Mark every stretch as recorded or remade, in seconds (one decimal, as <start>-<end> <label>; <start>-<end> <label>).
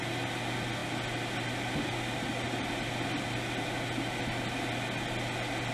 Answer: 0.0-5.7 recorded